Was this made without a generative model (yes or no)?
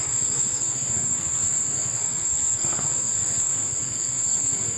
no